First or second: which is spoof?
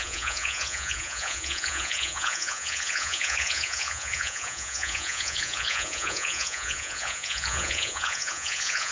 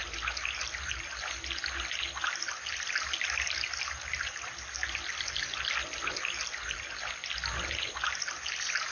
first